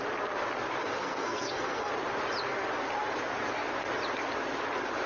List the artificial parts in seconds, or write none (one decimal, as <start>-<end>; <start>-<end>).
0.8-1.9